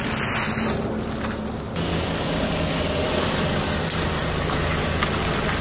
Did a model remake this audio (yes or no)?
no